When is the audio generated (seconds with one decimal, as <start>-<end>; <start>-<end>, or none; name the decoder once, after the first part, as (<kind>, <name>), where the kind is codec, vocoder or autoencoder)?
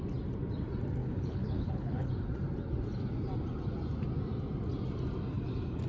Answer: 1.0-2.1 (codec, HILCodec)